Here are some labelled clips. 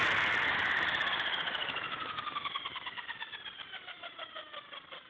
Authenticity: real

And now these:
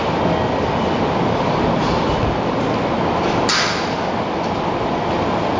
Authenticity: real